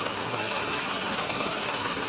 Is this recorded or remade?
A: remade